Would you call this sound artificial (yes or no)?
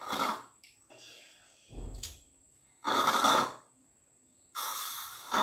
yes